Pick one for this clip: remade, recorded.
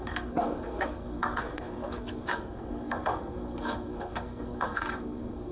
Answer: remade